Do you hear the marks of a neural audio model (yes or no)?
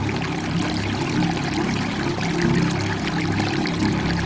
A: no